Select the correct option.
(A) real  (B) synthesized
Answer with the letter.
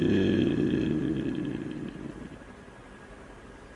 A